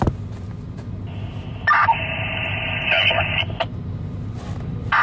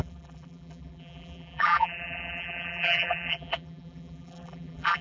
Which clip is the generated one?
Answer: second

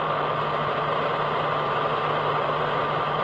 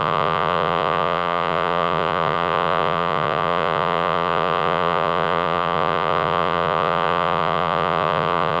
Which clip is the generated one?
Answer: second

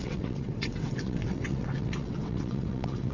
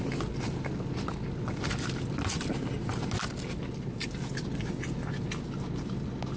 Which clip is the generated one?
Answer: first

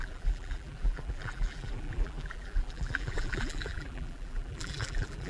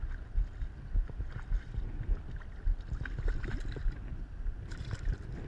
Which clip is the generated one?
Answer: first